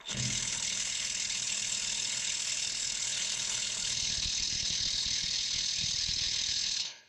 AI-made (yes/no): yes